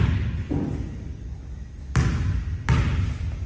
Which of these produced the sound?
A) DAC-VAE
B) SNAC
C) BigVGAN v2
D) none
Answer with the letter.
D